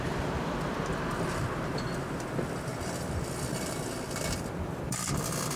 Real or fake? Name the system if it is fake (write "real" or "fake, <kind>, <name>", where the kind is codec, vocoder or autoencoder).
fake, vocoder, BigVGAN v2